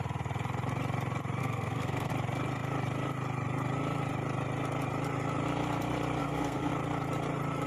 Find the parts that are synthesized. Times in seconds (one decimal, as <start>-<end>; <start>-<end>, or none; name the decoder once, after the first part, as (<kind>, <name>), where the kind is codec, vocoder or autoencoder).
1.4-2.1 (codec, SNAC); 6.2-6.7